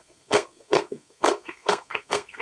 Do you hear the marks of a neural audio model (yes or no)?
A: yes